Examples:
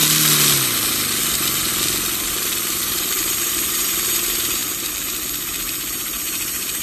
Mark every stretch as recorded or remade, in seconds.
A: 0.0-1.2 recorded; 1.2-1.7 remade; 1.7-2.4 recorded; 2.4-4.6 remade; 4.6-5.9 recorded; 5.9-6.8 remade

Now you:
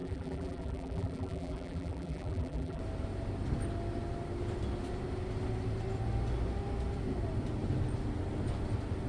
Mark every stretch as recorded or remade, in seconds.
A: 0.0-2.8 remade; 2.8-9.1 recorded

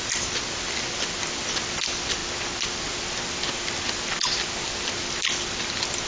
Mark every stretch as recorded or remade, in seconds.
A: 0.0-6.1 recorded

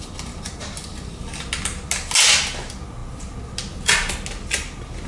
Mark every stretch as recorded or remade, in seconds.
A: 0.0-5.1 recorded